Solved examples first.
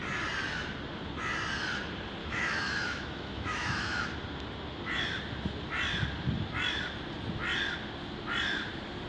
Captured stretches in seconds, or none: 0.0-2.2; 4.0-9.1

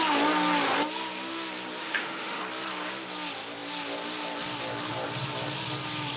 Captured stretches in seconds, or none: 0.0-1.8; 2.4-6.2

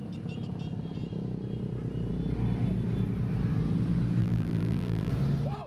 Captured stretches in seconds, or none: 0.0-4.2; 5.1-5.7

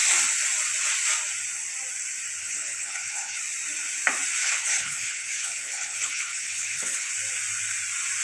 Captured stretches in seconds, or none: 0.0-2.4; 3.4-4.4; 7.1-8.2

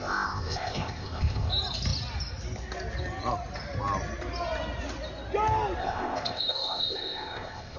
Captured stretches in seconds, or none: 1.5-5.8

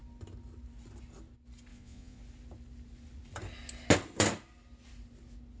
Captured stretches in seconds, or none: 0.0-1.7; 2.2-5.6